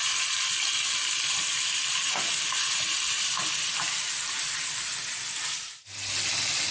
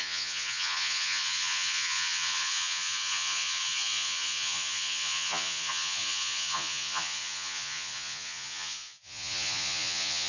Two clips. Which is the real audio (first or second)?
first